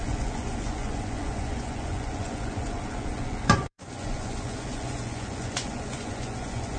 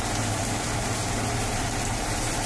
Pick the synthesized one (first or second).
first